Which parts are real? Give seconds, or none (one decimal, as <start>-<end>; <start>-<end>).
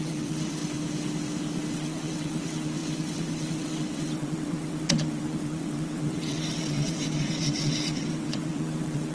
0.6-1.7